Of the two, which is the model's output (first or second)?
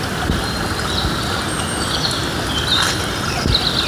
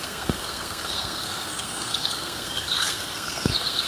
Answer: second